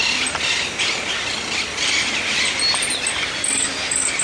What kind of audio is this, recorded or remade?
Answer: recorded